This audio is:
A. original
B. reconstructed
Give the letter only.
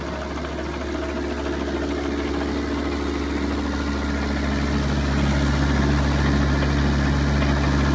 A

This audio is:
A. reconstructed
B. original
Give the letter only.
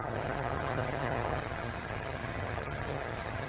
A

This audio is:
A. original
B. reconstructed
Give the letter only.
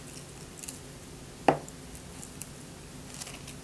A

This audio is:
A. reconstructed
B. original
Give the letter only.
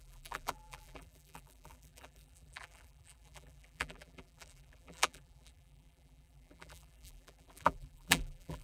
A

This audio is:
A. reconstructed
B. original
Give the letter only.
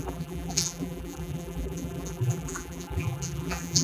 A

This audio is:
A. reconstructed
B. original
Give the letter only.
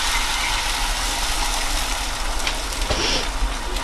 B